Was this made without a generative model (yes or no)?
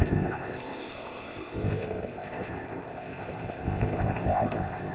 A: no